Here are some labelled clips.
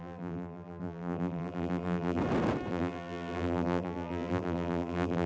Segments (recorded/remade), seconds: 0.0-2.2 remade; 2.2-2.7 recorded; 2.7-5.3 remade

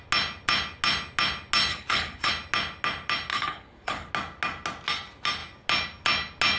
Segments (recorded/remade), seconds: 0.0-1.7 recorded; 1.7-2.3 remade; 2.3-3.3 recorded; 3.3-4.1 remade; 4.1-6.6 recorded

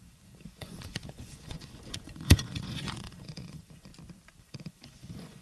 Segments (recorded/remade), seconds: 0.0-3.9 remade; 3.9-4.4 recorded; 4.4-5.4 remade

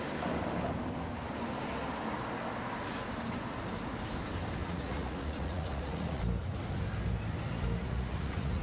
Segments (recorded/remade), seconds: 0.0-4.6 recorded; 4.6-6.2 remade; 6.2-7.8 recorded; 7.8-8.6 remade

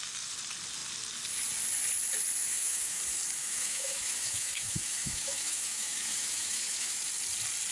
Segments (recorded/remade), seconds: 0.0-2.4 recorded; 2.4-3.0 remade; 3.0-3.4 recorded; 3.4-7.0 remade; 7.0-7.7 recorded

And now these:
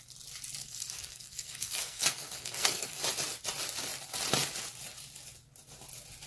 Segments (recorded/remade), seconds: 0.0-0.6 recorded; 0.6-3.0 remade; 3.0-6.3 recorded

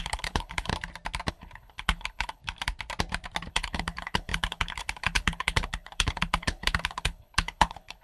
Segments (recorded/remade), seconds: 0.0-0.7 remade; 0.7-1.3 recorded; 1.3-2.4 remade; 2.4-3.5 recorded; 3.5-8.0 remade